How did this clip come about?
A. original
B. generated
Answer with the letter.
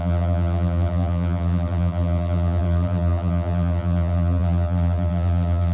B